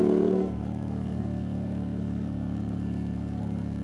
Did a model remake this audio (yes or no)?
yes